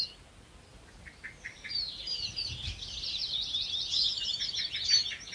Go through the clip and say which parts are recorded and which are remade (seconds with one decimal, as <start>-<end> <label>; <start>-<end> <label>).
0.0-0.7 recorded; 0.7-3.9 remade; 3.9-5.3 recorded